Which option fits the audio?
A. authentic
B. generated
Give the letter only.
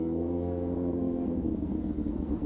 B